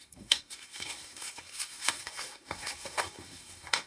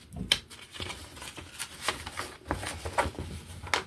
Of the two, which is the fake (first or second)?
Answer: first